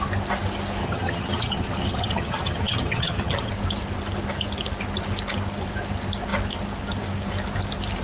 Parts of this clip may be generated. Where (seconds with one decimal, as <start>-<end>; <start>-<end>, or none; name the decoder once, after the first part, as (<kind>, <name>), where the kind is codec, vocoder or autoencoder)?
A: 0.8-3.5 (vocoder, HiFi-GAN)